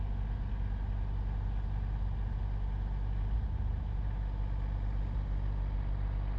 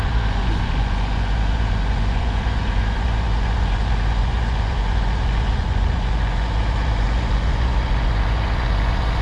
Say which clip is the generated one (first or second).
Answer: second